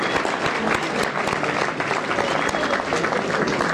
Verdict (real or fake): real